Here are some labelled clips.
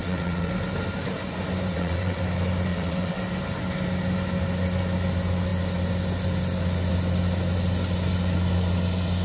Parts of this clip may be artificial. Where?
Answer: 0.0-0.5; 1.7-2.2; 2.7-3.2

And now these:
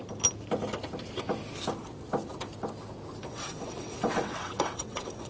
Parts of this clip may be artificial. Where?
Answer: 3.2-5.3

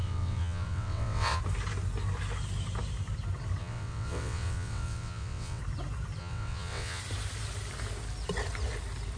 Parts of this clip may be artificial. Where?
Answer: 0.0-1.4; 3.6-5.6; 6.2-7.0

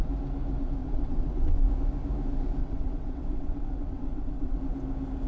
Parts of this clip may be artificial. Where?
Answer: 0.8-1.6; 2.6-4.6